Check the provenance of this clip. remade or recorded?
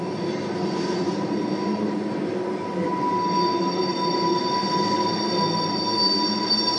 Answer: recorded